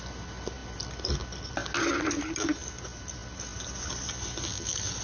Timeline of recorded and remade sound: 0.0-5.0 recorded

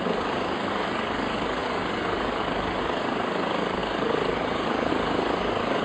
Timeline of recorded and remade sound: 0.0-5.8 remade

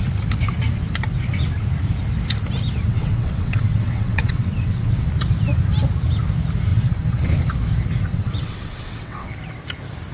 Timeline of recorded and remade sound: 0.0-2.9 recorded; 2.9-5.1 remade; 5.1-6.7 recorded; 6.7-7.3 remade; 7.3-8.1 recorded; 8.1-9.3 remade; 9.3-10.1 recorded

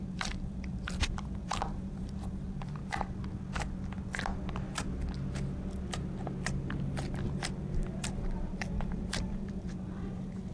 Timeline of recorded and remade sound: 0.0-2.8 remade; 2.8-7.6 recorded; 7.6-10.5 remade

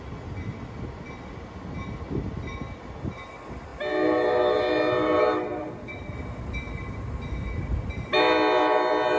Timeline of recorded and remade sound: 0.0-9.2 recorded